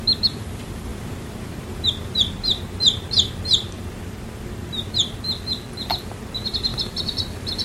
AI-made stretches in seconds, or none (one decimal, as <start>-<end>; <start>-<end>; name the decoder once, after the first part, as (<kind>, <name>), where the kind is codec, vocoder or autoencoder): 0.0-5.0 (vocoder, BigVGAN v2); 5.8-7.6